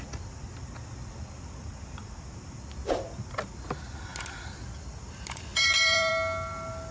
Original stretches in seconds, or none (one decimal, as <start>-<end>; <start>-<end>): 0.0-5.5; 6.1-6.9